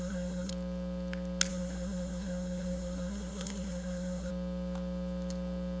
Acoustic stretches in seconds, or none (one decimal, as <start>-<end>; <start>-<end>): 0.5-1.5; 4.3-5.8